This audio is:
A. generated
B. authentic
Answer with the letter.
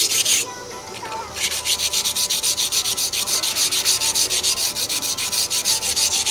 B